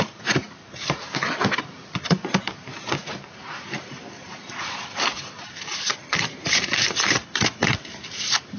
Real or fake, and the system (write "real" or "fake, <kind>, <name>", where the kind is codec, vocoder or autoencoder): fake, vocoder, BigVGAN v2